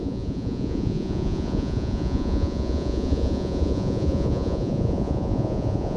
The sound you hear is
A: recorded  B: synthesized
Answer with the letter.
B